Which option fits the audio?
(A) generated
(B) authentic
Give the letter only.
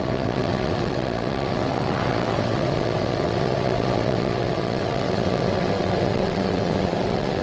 A